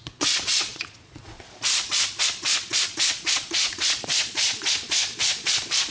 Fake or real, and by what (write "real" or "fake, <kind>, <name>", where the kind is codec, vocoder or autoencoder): fake, vocoder, Vocos